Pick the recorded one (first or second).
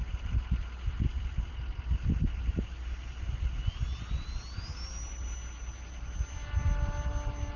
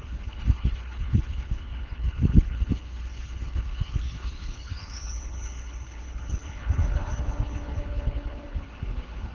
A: first